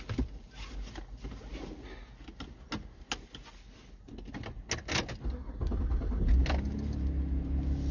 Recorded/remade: recorded